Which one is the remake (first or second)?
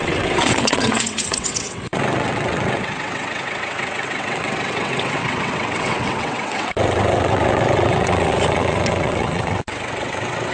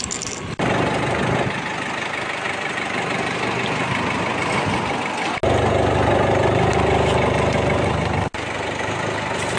first